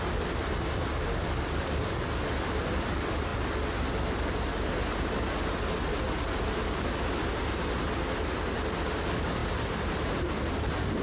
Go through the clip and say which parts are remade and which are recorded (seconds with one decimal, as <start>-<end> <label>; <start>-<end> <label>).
0.0-11.0 recorded